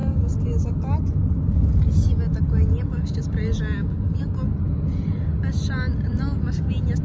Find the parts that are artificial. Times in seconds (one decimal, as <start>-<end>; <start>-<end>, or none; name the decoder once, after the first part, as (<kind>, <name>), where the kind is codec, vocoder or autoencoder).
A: none